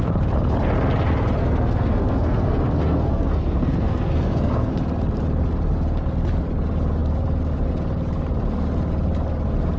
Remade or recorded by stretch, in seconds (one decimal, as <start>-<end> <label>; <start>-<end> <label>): 0.0-1.4 recorded; 1.4-4.7 remade; 4.7-9.8 recorded